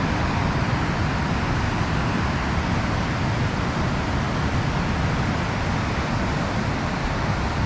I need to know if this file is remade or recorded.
recorded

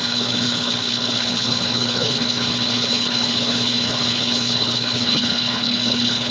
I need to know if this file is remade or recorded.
remade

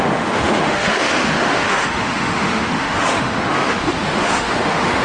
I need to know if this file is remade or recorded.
remade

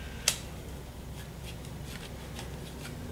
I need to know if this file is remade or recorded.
recorded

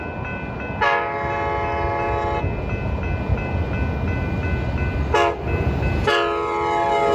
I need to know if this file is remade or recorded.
recorded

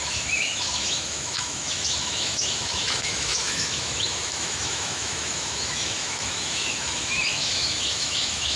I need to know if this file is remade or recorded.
remade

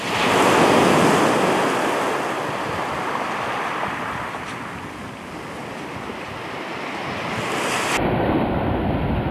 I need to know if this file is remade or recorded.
recorded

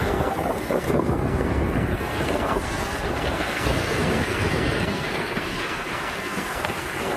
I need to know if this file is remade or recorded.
remade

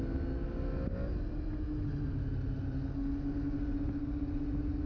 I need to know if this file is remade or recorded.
recorded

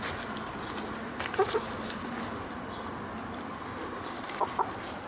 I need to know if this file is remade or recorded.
recorded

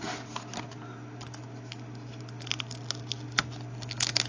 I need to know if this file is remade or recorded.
recorded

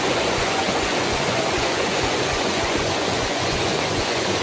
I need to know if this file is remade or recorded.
remade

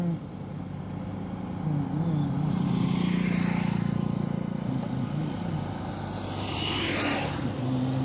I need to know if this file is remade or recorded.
recorded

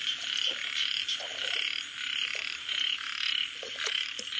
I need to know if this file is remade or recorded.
recorded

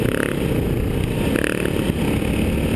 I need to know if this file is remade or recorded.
recorded